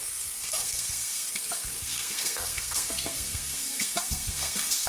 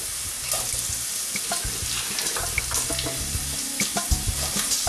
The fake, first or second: first